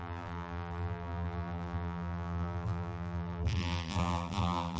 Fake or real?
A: fake